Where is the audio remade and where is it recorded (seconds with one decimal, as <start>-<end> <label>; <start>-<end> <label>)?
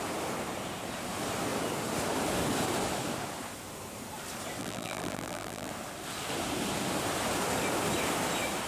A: 0.0-4.6 recorded; 4.6-5.7 remade; 5.7-8.7 recorded